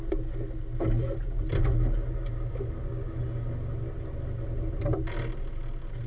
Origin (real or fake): real